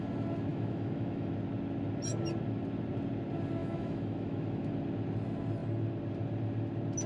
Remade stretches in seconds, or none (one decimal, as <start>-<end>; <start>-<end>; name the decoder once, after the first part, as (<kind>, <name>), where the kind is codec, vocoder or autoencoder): 0.5-1.3 (autoencoder, DAC-VAE); 3.6-4.7